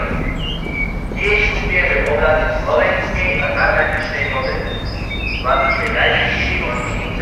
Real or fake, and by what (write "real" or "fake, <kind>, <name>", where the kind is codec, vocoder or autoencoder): real